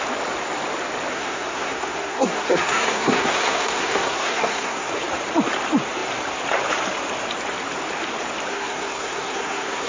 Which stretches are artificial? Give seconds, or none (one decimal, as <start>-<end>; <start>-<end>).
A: 1.1-4.9; 8.5-9.9